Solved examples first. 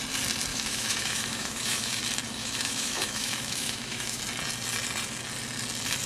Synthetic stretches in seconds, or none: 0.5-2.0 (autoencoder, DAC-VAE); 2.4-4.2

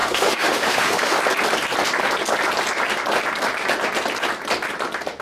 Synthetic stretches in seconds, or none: 0.0-1.2 (autoencoder, DAC-VAE)

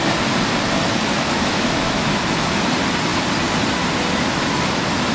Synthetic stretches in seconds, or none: 1.1-2.6 (autoencoder, DAC-VAE)

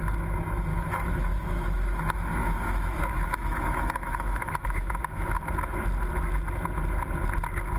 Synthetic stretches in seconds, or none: 0.7-5.4 (autoencoder, DAC-VAE)

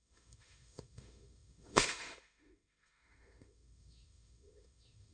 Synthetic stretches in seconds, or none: 0.0-5.1 (autoencoder, DAC-VAE)

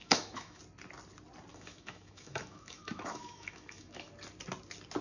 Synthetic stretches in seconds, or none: 0.0-0.6 (autoencoder, DAC-VAE); 1.5-4.1

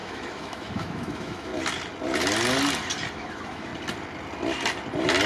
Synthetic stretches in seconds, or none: 0.0-1.5 (autoencoder, DAC-VAE); 3.1-3.7

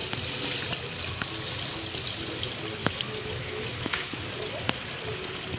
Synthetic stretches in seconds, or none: 2.8-4.2 (autoencoder, DAC-VAE)